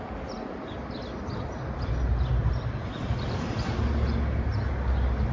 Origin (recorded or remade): recorded